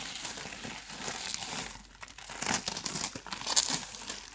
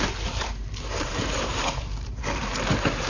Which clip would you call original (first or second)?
first